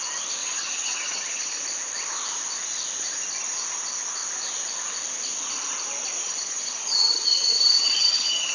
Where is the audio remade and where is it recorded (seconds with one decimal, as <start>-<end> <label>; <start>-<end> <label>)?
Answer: 0.0-0.4 recorded; 0.4-1.6 remade; 1.6-6.2 recorded; 6.2-8.5 remade